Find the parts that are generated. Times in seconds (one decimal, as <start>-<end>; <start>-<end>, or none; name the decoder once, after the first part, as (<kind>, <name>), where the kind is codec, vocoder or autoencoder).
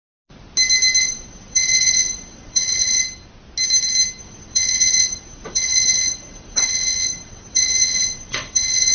1.0-3.0 (vocoder, WaveNeXt); 4.2-8.9